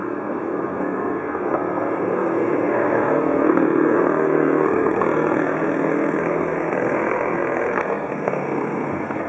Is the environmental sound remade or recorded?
remade